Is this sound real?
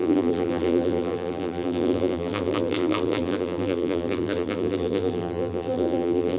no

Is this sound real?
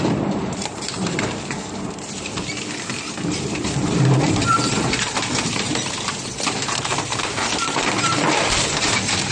no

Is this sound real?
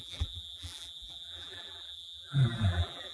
no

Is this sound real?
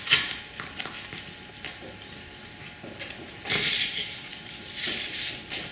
no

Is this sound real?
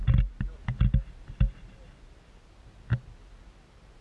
yes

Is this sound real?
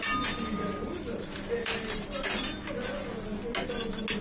yes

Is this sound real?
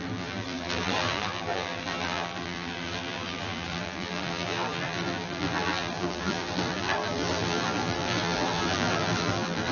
no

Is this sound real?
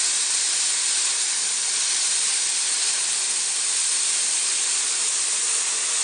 yes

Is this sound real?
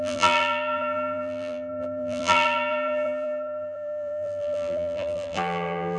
no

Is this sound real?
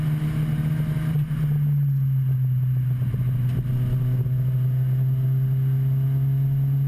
yes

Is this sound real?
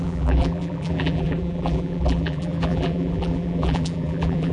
no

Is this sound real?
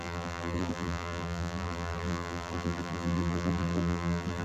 no